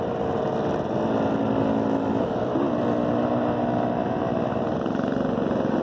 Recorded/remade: recorded